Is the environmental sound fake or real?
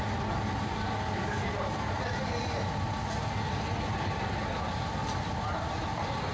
real